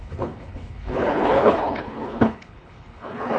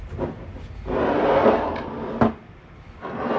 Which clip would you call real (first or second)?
second